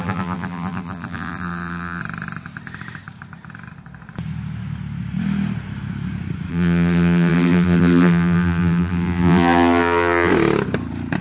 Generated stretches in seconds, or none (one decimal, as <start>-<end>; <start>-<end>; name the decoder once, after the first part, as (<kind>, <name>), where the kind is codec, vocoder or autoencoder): 0.0-2.0 (vocoder, BigVGAN v2); 6.5-10.3